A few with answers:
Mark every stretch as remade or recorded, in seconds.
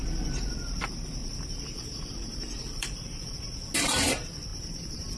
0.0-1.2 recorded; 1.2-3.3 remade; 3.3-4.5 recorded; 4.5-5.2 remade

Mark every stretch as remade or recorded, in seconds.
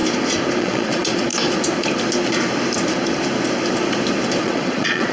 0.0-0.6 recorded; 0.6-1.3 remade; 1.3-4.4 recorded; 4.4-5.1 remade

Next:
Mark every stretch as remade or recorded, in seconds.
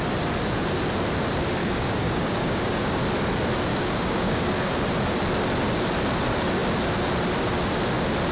0.0-1.6 recorded; 1.6-3.0 remade; 3.0-3.7 recorded; 3.7-4.7 remade; 4.7-8.3 recorded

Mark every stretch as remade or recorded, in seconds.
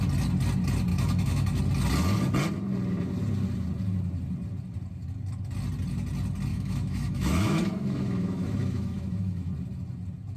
0.0-0.9 recorded; 0.9-1.6 remade; 1.6-6.5 recorded; 6.5-9.5 remade; 9.5-10.4 recorded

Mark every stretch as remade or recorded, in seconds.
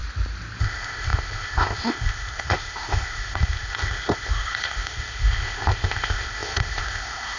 0.0-0.6 recorded; 0.6-7.4 remade